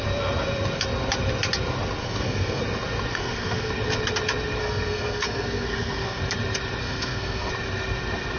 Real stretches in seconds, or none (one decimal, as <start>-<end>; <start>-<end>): 0.0-2.0; 2.6-3.1; 3.7-4.6; 6.2-6.8; 7.5-8.4